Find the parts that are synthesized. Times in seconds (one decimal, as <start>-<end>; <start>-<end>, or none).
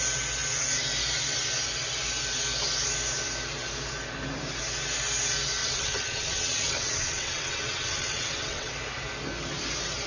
5.6-8.7